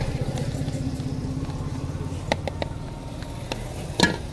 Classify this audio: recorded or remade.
recorded